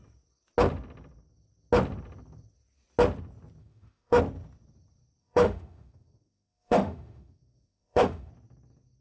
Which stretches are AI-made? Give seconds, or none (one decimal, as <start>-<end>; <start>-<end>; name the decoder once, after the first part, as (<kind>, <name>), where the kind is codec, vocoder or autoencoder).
3.6-4.2 (autoencoder, DAC-VAE); 5.2-8.3